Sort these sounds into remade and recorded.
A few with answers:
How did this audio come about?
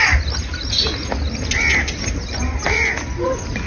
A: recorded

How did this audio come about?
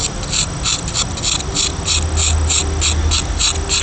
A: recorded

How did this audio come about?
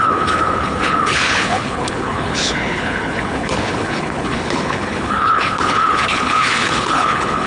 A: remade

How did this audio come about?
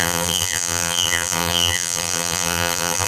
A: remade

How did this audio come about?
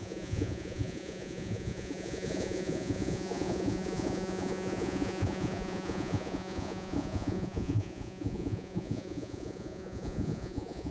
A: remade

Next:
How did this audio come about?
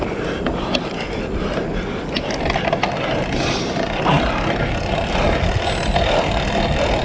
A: recorded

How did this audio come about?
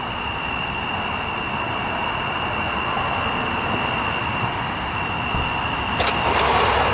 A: remade